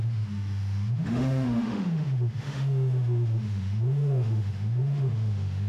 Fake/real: fake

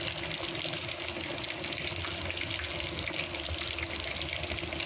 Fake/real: real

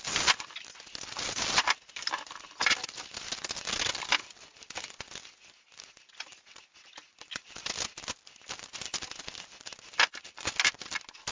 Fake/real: real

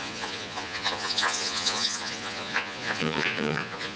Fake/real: fake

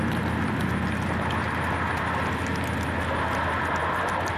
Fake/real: real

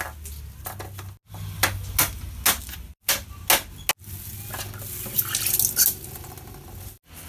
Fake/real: real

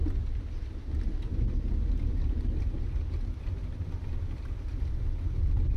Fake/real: real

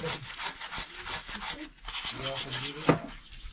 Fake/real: real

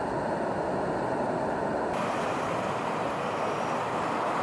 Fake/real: real